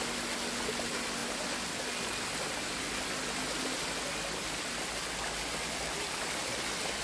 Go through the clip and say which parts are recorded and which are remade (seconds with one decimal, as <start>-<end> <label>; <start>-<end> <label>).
0.0-7.0 recorded